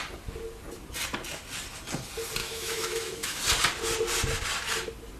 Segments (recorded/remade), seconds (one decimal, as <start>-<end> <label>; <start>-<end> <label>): 0.0-2.4 recorded; 2.4-3.4 remade; 3.4-5.2 recorded